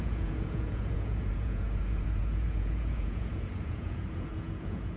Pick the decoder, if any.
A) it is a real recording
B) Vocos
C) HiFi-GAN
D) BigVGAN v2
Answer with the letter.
B